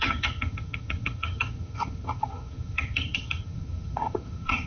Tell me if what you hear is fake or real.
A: fake